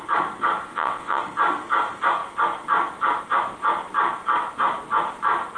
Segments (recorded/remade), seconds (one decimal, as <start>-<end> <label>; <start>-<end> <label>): 0.0-0.7 recorded; 0.7-1.2 remade; 1.2-5.6 recorded